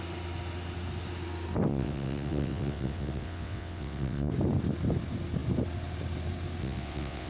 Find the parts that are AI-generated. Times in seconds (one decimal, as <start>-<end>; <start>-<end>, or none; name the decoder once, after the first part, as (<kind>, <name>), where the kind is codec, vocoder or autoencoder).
1.7-4.3 (vocoder, WaveNeXt); 6.6-7.3